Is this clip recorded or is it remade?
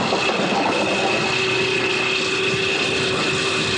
recorded